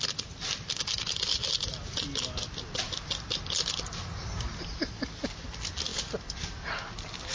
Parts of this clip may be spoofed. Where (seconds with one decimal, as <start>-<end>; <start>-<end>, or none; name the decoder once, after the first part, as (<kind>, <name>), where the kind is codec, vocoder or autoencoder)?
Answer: 1.4-3.0 (vocoder, BigVGAN v2)